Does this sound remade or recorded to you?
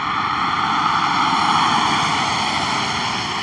recorded